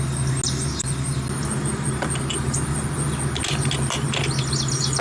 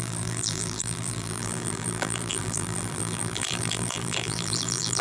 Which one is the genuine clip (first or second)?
first